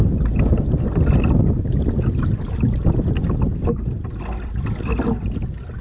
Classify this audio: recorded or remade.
recorded